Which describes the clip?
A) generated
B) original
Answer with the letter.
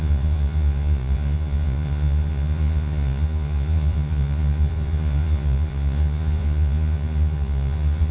A